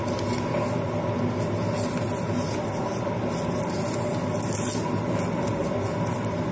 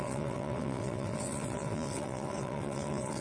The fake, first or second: second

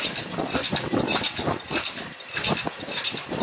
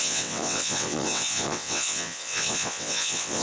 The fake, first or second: second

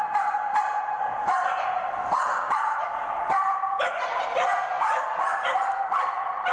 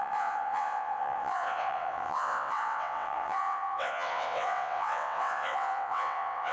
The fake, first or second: second